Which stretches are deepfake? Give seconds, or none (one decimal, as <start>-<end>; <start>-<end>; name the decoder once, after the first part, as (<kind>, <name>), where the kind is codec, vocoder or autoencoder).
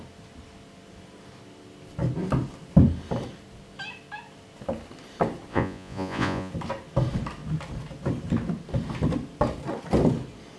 5.5-6.5 (vocoder, Vocos)